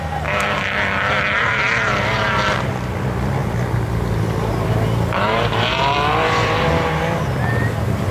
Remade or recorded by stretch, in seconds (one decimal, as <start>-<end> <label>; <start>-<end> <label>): 0.0-8.1 recorded

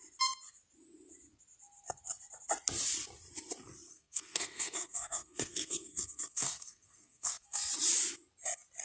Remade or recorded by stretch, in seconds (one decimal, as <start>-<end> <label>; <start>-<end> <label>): 0.0-3.9 recorded; 3.9-7.7 remade; 7.7-8.8 recorded

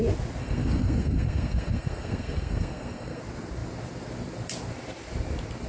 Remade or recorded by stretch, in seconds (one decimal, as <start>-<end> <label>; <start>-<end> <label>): 0.0-0.4 recorded; 0.4-3.2 remade; 3.2-5.7 recorded

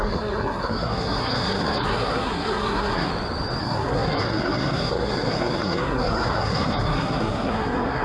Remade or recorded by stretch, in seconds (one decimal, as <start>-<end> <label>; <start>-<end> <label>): 0.0-3.1 remade; 3.1-3.6 recorded; 3.6-8.0 remade

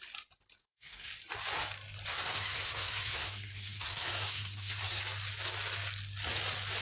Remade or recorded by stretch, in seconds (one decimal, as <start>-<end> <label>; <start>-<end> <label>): 0.0-0.6 recorded; 0.6-1.1 remade; 1.1-2.1 recorded; 2.1-5.0 remade; 5.0-6.8 recorded

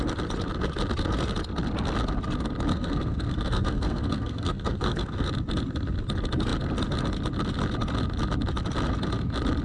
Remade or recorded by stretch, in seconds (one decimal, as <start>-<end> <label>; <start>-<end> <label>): 0.0-2.7 recorded; 2.7-5.3 remade; 5.3-9.6 recorded

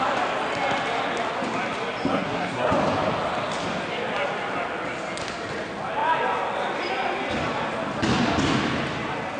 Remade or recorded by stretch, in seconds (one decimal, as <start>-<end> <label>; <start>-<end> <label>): 0.0-2.1 recorded; 2.1-2.7 remade; 2.7-9.4 recorded

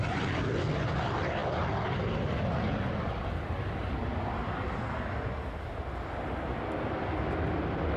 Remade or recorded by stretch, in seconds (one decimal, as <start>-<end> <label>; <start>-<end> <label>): 0.0-8.0 recorded